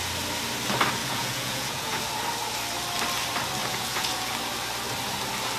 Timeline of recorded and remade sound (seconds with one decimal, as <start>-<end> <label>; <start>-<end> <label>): 0.0-1.0 recorded; 1.0-2.0 remade; 2.0-3.6 recorded; 3.6-4.3 remade; 4.3-5.6 recorded